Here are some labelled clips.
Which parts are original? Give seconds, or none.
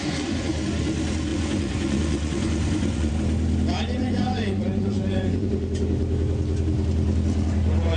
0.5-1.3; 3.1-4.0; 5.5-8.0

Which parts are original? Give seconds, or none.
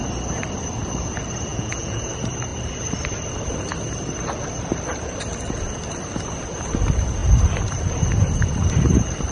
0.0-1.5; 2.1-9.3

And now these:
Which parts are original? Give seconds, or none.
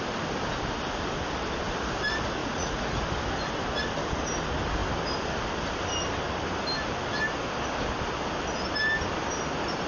0.0-2.4; 3.0-9.9